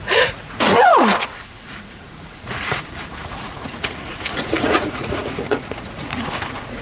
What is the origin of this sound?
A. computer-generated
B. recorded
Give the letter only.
A